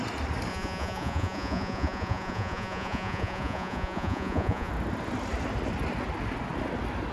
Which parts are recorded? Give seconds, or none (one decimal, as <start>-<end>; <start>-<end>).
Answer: 0.0-0.5; 4.7-7.1